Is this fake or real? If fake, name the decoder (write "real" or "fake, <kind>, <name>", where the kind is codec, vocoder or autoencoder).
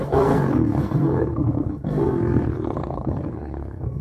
fake, codec, SNAC